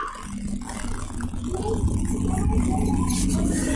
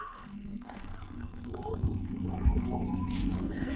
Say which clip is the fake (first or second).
second